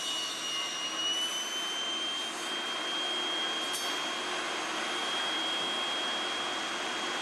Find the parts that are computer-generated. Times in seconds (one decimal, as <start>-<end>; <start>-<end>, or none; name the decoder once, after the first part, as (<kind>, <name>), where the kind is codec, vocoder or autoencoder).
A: none